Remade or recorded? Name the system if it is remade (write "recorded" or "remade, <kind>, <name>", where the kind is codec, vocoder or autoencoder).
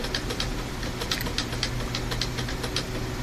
recorded